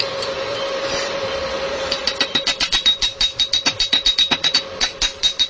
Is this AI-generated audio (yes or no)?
yes